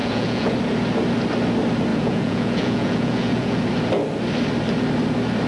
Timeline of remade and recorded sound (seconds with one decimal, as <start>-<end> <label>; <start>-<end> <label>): 0.0-0.5 remade; 0.5-1.9 recorded; 1.9-3.6 remade; 3.6-5.5 recorded